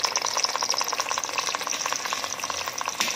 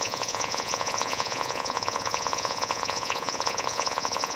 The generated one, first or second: second